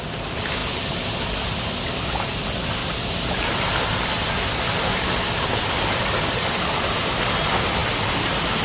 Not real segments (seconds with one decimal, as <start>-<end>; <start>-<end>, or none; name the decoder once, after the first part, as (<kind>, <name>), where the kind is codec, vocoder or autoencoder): 0.6-1.6 (vocoder, BigVGAN v2); 7.8-8.6

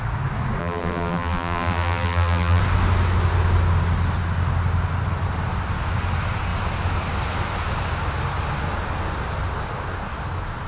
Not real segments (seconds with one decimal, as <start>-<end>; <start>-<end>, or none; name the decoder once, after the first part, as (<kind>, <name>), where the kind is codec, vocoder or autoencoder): 0.6-2.6 (vocoder, BigVGAN v2)